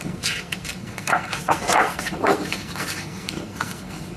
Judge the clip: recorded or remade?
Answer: remade